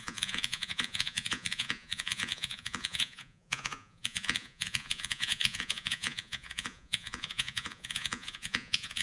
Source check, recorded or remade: remade